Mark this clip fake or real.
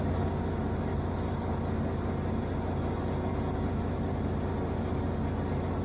real